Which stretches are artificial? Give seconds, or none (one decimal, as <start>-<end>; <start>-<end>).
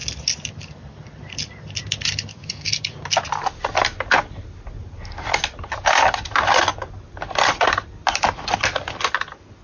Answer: 2.3-2.9